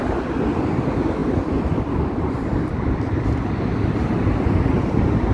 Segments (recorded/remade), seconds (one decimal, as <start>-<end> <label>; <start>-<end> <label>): 0.0-5.3 recorded